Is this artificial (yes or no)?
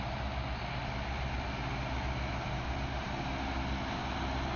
no